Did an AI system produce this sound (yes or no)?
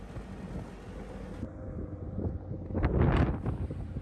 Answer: no